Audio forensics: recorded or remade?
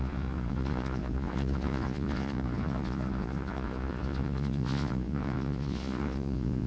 remade